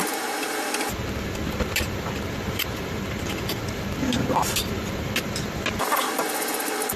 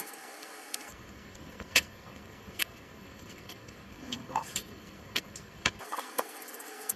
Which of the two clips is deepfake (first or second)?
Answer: second